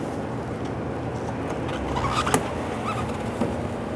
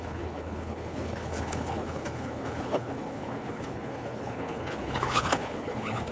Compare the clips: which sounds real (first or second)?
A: first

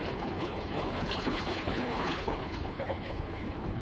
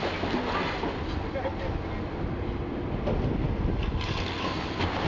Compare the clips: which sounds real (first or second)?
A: second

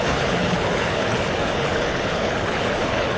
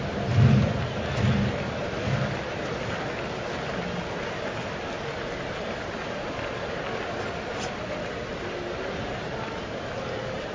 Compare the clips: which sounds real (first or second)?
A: second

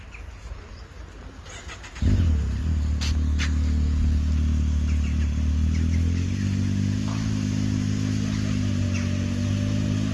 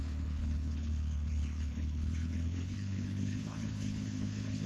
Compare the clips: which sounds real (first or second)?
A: first